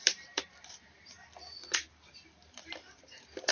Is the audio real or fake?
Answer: fake